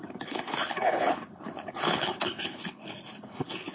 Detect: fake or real fake